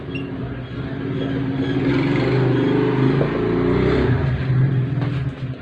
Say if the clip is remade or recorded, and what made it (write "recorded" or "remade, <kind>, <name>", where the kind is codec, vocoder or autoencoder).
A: recorded